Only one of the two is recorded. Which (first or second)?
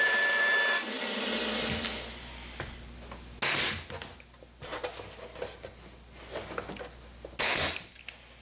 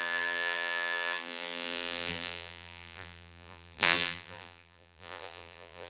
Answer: first